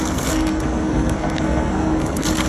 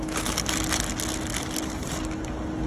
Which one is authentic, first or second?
second